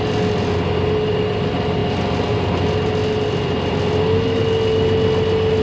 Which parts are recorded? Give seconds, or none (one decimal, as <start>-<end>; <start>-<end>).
0.0-5.6